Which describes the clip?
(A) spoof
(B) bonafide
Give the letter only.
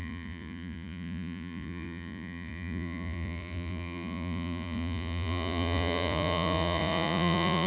A